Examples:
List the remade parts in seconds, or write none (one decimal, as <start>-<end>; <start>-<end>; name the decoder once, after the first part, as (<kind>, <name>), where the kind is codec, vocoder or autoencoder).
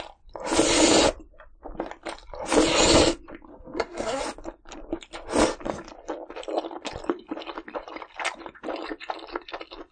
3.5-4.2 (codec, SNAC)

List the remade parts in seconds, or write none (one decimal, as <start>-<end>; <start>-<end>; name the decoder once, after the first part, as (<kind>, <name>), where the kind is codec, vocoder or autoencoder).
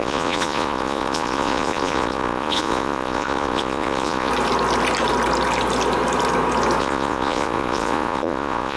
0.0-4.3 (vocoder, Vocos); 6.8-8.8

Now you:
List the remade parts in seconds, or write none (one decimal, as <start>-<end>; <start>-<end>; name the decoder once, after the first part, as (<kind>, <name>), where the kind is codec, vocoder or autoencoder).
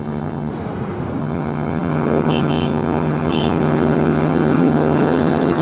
0.0-0.5 (vocoder, HiFi-GAN); 1.2-5.6